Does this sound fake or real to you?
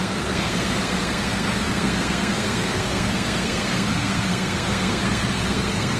fake